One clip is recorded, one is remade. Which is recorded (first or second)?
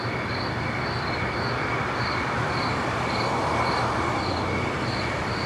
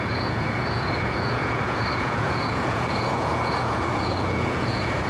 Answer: first